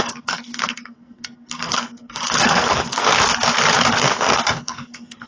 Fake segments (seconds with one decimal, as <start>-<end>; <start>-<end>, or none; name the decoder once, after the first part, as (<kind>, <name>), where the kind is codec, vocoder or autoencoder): 0.0-3.1 (codec, SNAC); 3.9-5.3